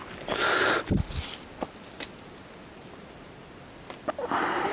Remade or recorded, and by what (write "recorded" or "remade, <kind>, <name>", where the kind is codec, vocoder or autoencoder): recorded